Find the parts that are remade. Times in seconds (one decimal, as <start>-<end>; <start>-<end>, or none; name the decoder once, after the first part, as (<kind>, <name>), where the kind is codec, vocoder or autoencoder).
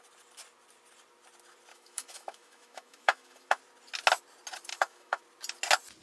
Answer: 1.7-3.6 (autoencoder, DAC-VAE); 4.7-5.2